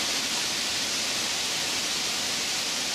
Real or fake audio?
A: real